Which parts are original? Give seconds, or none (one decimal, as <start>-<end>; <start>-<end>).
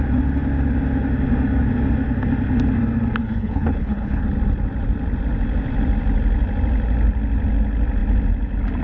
0.0-3.2; 4.2-8.8